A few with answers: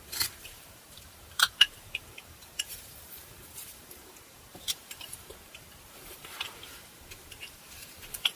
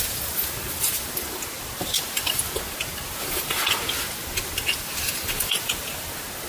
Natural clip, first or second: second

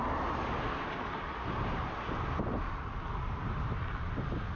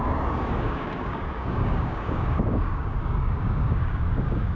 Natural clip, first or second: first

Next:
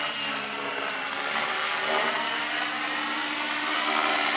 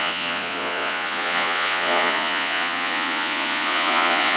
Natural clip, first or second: first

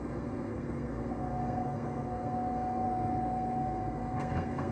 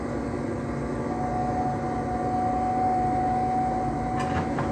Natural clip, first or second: second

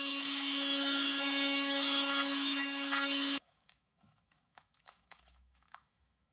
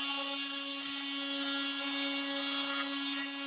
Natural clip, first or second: second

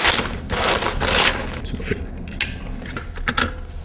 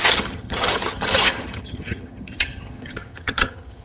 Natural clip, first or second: first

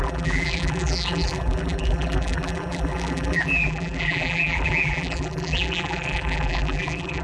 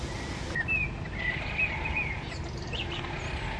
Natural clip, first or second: second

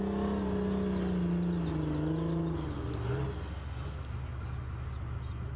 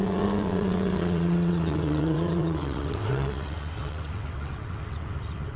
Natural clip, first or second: first